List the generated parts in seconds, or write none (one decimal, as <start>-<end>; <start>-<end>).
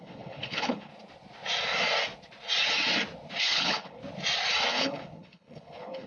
0.0-0.9; 3.4-4.0; 4.7-6.1